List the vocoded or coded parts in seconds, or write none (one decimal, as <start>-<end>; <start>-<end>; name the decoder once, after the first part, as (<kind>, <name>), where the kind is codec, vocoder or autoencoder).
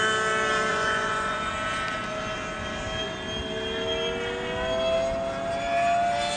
0.7-1.5 (vocoder, Vocos)